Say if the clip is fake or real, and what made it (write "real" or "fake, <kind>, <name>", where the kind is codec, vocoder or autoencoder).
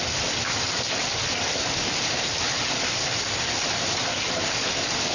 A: real